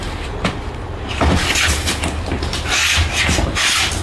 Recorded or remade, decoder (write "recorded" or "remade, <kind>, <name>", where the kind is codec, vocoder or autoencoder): recorded